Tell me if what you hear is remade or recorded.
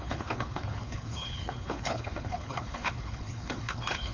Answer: remade